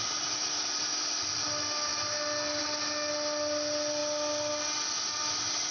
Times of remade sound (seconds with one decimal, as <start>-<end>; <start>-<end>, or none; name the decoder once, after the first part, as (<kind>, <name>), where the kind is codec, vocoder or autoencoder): none